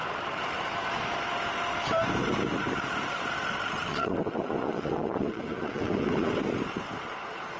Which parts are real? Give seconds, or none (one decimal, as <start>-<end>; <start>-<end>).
0.0-3.9; 6.3-7.6